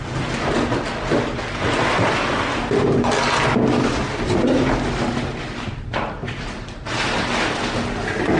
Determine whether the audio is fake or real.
real